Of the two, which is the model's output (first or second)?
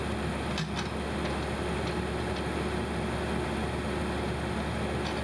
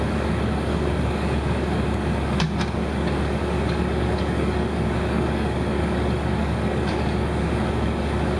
second